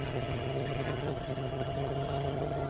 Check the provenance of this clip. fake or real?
fake